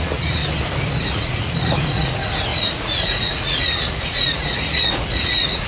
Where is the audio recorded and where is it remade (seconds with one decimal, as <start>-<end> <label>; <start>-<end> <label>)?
0.0-0.4 remade; 0.4-1.1 recorded; 1.1-5.7 remade